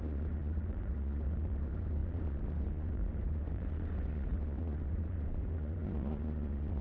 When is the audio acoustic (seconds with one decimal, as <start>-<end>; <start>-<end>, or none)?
none